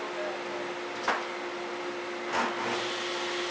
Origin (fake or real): real